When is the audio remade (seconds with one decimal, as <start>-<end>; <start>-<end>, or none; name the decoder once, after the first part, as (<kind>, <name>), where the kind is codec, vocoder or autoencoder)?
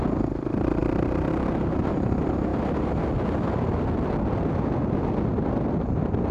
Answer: none